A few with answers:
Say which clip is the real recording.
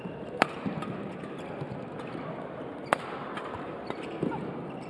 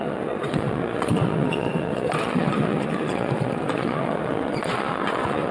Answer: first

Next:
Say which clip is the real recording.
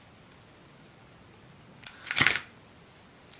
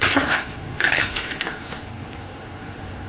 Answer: first